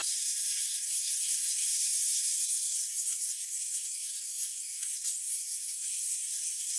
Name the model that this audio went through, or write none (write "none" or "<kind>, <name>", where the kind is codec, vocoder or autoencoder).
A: codec, SNAC